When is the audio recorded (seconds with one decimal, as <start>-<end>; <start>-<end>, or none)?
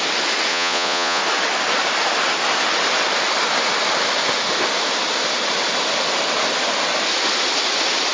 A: 0.0-0.5; 1.2-8.1